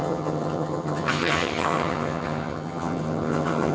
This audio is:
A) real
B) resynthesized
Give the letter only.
B